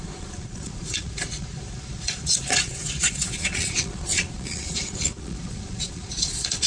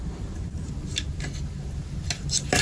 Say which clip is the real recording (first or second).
second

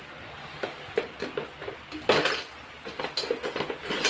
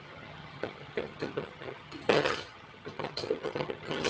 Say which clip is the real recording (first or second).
first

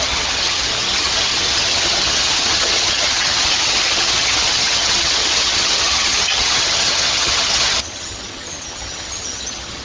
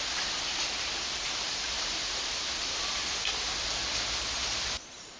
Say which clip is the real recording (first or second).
second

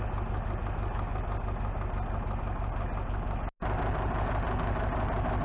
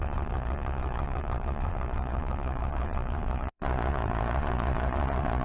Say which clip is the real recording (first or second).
first